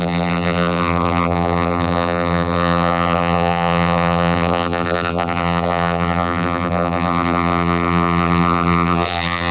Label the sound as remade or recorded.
remade